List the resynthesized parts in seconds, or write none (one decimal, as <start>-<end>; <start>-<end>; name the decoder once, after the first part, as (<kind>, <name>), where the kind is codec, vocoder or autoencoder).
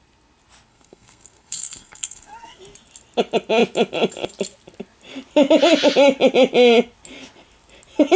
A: 0.7-2.6 (codec, SNAC)